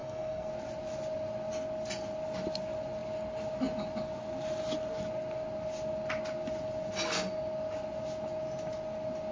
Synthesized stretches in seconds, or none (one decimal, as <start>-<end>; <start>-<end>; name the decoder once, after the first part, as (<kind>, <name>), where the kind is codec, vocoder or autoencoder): 0.0-0.5 (codec, SNAC)